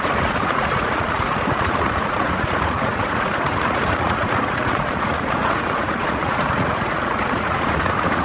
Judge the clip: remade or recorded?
remade